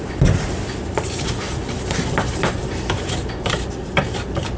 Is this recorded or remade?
remade